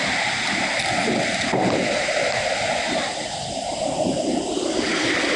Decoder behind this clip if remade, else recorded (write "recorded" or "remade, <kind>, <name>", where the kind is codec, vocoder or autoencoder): recorded